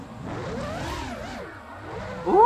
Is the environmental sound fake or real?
real